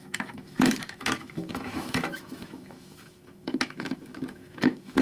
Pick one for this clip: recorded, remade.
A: remade